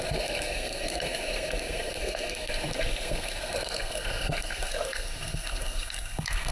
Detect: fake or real fake